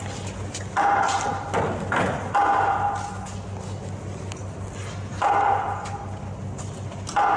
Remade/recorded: recorded